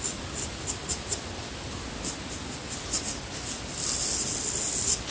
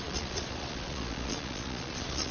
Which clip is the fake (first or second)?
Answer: second